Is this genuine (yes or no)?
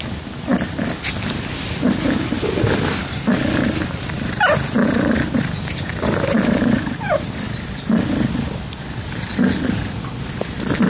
yes